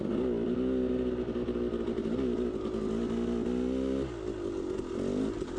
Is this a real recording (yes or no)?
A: yes